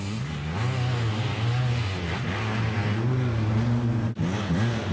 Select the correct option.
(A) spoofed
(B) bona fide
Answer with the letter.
B